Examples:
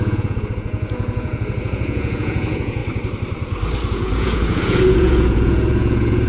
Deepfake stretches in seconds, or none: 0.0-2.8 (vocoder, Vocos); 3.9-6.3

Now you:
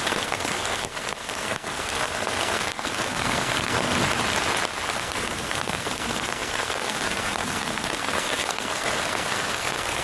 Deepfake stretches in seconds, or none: 0.0-3.9 (codec, SNAC); 4.9-10.0

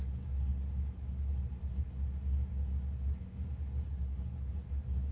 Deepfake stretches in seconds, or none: none

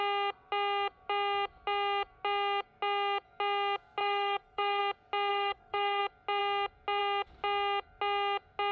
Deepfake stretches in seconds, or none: 4.0-4.8 (codec, DAC); 5.3-6.0

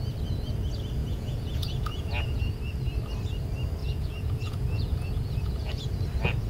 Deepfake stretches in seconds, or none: 1.0-2.4 (vocoder, Vocos); 3.8-5.7

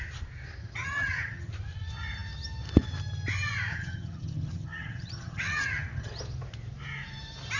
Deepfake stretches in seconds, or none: 0.6-1.5 (vocoder, HiFi-GAN); 3.7-6.1

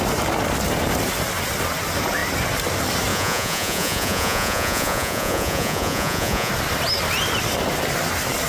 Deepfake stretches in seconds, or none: 3.1-6.5 (vocoder, Vocos)